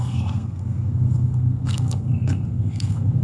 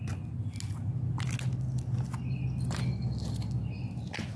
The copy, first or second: first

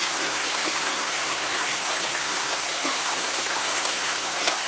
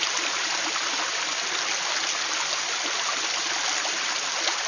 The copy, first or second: first